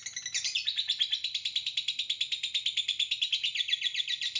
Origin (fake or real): real